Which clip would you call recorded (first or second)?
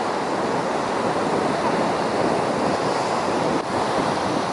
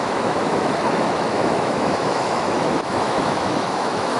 first